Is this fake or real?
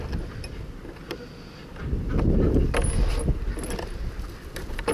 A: real